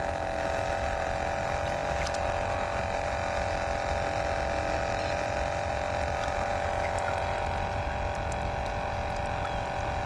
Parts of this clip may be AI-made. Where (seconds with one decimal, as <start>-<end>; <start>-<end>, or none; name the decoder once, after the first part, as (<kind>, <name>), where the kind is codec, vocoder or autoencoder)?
none